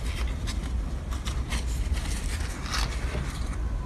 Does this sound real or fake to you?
real